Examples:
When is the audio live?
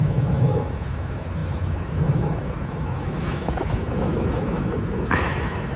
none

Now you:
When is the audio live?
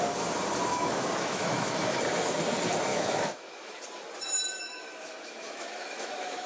0.0-0.7; 2.0-2.9; 3.8-4.6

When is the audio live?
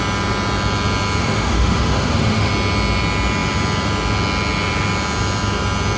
0.0-1.2; 2.5-6.0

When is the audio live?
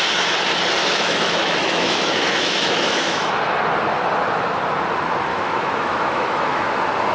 0.0-0.8; 3.3-5.3; 6.6-7.1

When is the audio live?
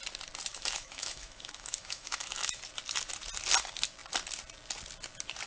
0.0-0.5; 2.6-5.5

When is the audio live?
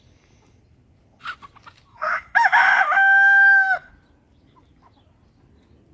0.0-1.9; 3.9-5.9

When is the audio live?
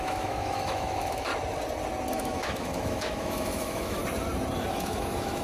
1.3-2.1; 4.0-4.7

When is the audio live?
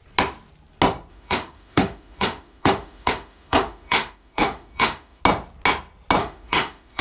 0.0-1.1; 5.2-6.2